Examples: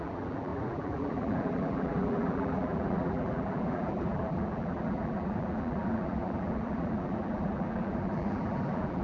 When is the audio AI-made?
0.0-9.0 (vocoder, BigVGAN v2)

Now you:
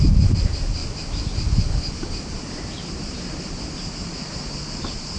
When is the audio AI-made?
none

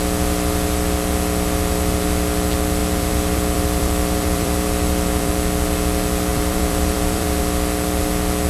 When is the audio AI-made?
2.8-5.3 (vocoder, BigVGAN v2); 6.3-7.4

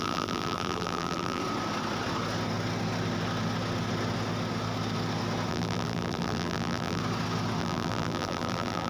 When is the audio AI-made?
0.0-1.4 (vocoder, BigVGAN v2); 5.5-7.0; 7.6-8.9

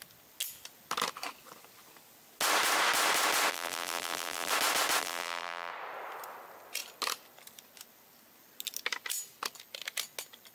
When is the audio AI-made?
3.5-4.5 (vocoder, BigVGAN v2); 5.0-5.7